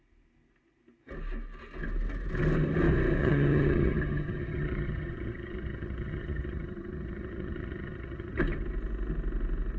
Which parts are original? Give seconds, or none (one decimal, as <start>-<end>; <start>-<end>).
0.0-3.2; 8.4-9.8